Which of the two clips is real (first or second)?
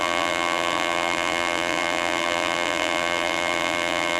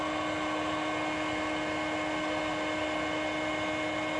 second